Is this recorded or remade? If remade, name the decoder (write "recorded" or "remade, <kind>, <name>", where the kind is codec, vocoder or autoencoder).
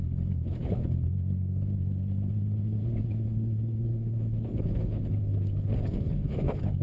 remade, codec, HILCodec